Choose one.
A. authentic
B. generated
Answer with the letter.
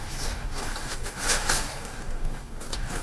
B